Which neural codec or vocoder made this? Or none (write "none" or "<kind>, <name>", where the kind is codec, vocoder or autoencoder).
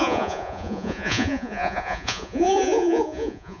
vocoder, Vocos